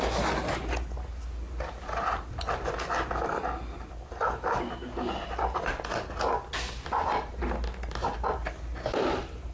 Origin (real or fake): real